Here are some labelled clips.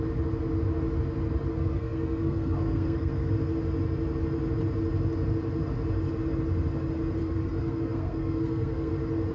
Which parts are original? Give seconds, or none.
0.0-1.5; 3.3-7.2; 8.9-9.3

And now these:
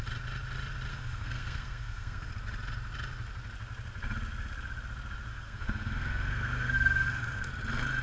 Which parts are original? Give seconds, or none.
0.0-0.9; 2.3-5.3; 7.5-8.0

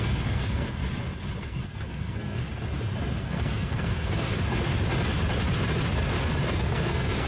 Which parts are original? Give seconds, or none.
0.8-1.4; 2.4-3.2; 4.3-6.5

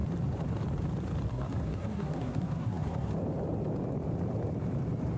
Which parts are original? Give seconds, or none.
0.0-1.3; 3.1-5.2

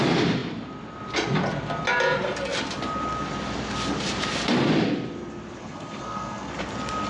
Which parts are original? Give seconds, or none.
0.0-5.6; 6.5-7.1

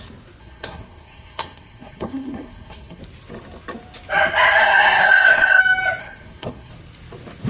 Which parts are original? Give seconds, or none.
0.0-0.4; 3.0-4.6; 5.6-6.0; 6.7-7.5